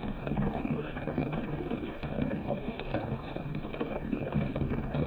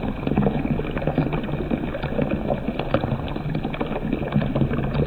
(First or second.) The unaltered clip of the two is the second